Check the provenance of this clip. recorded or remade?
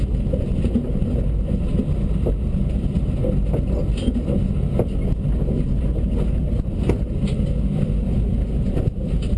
recorded